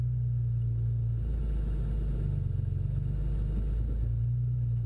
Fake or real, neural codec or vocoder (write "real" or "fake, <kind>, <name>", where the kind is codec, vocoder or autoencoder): real